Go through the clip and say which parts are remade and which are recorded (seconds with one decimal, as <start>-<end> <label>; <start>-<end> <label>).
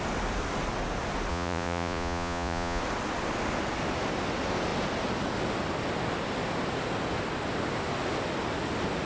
0.0-1.3 recorded; 1.3-2.8 remade; 2.8-9.1 recorded